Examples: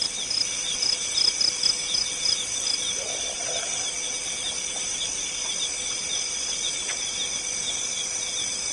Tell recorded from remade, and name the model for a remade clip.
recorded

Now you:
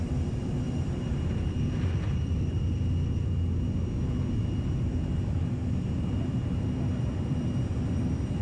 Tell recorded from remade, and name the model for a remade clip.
remade, vocoder, BigVGAN v2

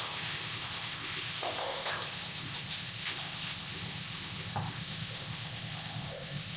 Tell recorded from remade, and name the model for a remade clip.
remade, codec, ZipCodec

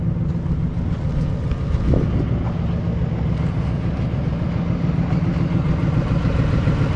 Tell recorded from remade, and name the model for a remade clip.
recorded